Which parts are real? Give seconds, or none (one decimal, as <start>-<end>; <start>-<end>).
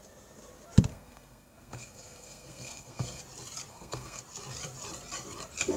0.0-0.9; 3.2-3.7; 4.2-5.8